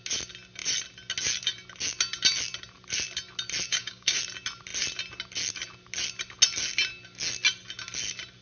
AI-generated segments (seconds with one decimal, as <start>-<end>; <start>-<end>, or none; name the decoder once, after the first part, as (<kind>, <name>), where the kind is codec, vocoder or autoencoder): 3.7-4.2 (codec, DAC)

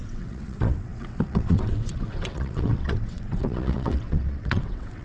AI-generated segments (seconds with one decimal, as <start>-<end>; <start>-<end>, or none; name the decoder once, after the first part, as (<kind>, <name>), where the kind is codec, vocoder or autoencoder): 0.0-5.0 (vocoder, WaveNeXt)

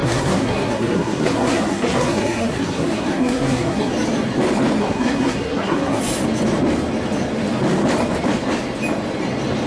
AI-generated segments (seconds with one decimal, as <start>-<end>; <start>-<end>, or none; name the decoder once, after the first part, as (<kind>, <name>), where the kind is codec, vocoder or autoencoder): 0.0-3.9 (codec, SNAC); 4.8-6.0